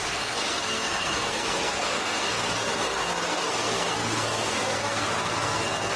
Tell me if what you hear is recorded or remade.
remade